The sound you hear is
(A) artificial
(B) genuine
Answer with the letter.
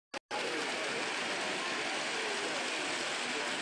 B